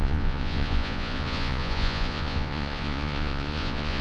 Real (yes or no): no